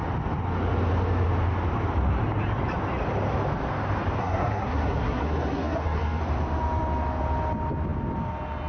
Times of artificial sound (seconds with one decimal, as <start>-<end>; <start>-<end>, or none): 4.2-6.2

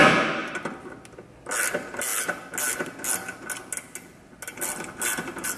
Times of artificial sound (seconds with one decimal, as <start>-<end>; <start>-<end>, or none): none